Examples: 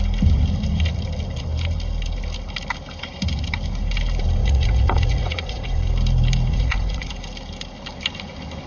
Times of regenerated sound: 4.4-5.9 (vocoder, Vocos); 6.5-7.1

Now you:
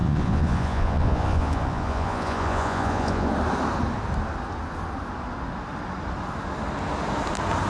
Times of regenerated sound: 0.0-3.3 (vocoder, Vocos)

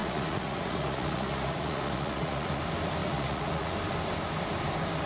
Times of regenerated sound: 0.0-2.6 (vocoder, Vocos); 3.0-3.7

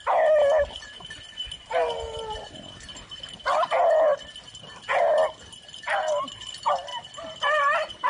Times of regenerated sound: none